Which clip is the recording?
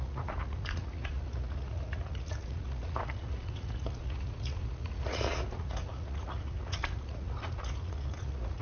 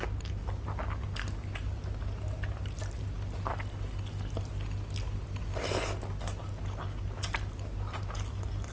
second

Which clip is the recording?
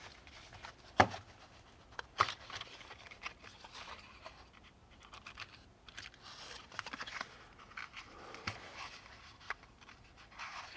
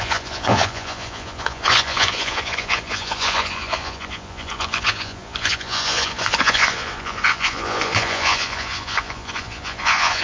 first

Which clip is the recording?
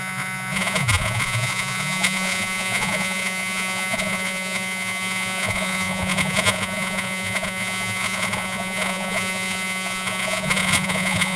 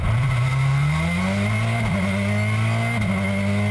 second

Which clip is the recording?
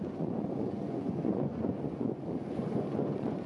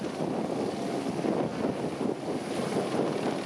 second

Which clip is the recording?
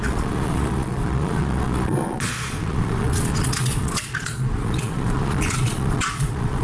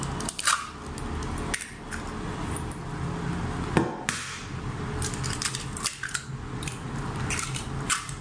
second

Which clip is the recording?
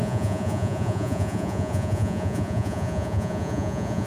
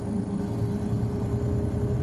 second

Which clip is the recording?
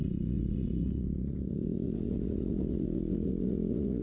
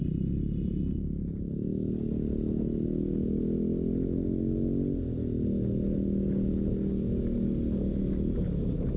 second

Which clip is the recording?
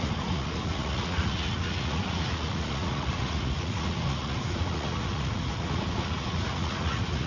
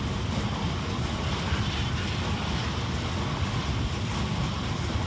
second